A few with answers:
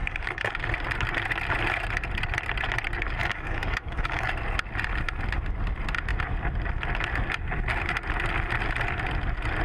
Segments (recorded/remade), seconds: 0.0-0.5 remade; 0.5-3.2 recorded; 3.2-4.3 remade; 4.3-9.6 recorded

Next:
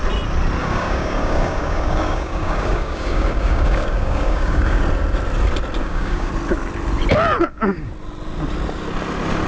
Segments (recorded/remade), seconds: 0.0-0.6 recorded; 0.6-4.8 remade; 4.8-5.8 recorded; 5.8-6.3 remade; 6.3-7.4 recorded; 7.4-7.9 remade; 7.9-9.5 recorded

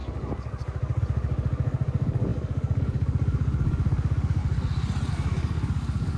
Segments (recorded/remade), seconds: 0.0-4.4 remade; 4.4-5.1 recorded; 5.1-6.2 remade

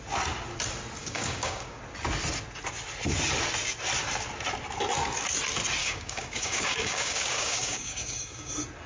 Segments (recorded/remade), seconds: 0.0-1.0 recorded; 1.0-1.8 remade; 1.8-5.8 recorded; 5.8-8.5 remade; 8.5-8.9 recorded

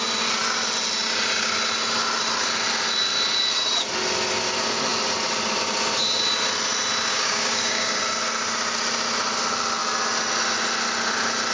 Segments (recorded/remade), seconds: 0.0-7.1 recorded; 7.1-8.0 remade; 8.0-11.5 recorded

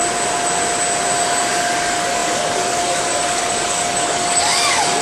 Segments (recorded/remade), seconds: 0.0-1.5 recorded; 1.5-5.0 remade